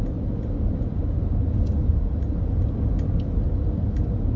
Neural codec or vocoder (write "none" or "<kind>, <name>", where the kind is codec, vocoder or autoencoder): none